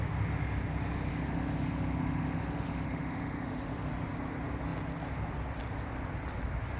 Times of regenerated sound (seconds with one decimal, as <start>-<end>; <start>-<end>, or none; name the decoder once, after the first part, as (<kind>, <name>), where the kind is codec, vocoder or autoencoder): 1.1-3.9 (autoencoder, DAC-VAE)